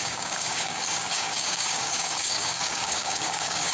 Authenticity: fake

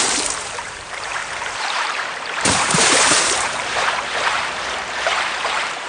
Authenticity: fake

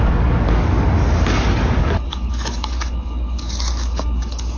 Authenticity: fake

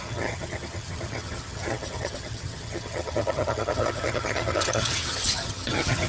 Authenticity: fake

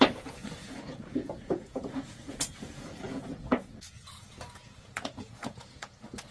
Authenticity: fake